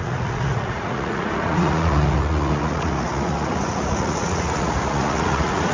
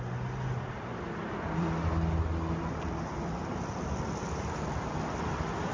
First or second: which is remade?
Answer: first